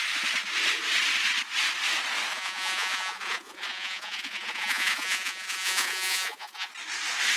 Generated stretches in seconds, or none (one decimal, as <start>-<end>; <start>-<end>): 2.3-6.7